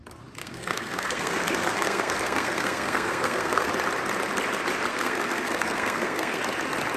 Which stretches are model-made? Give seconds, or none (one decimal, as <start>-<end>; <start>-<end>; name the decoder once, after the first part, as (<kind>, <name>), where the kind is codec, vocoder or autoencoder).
0.4-3.7 (codec, SNAC); 4.9-6.4